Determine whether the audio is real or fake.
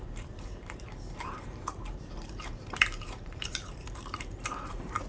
fake